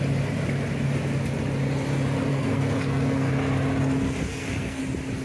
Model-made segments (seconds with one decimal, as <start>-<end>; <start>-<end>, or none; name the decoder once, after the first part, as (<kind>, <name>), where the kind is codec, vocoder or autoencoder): 2.3-3.3 (codec, SNAC); 4.3-4.8

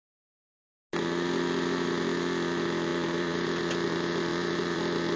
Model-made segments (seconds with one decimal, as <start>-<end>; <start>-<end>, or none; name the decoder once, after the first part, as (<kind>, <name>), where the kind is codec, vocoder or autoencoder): 2.9-3.6 (vocoder, BigVGAN v2); 4.3-5.2

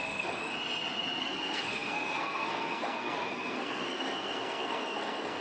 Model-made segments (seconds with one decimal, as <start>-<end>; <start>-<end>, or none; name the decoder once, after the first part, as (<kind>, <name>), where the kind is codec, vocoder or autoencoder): 0.0-0.4 (codec, SNAC); 1.2-5.4